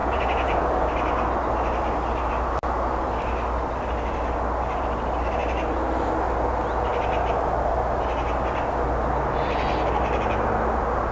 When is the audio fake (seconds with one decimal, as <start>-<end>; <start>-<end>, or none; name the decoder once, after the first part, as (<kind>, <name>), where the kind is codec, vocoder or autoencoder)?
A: 0.0-0.7 (vocoder, Vocos)